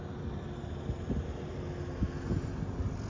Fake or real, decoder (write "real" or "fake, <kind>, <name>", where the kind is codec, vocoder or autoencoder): real